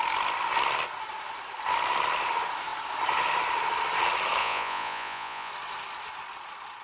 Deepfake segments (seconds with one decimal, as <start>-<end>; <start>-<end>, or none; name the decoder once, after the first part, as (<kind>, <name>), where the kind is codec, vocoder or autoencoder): 4.4-5.5 (vocoder, Vocos)